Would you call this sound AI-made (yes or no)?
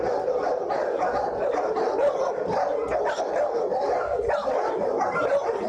no